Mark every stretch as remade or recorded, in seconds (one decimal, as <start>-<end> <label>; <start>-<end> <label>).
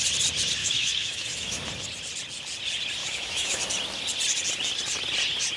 0.0-0.6 recorded; 0.6-1.6 remade; 1.6-3.0 recorded; 3.0-3.6 remade; 3.6-5.6 recorded